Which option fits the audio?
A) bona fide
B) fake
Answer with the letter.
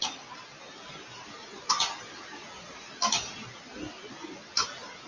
A